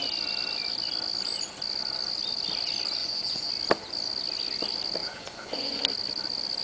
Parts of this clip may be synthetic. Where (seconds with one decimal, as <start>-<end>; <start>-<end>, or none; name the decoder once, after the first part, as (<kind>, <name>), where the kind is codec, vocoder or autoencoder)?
3.0-3.5 (vocoder, Vocos); 5.0-5.8